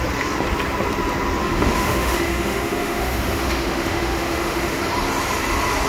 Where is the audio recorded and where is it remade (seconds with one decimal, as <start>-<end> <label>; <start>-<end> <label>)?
0.0-1.4 recorded; 1.4-4.8 remade; 4.8-5.9 recorded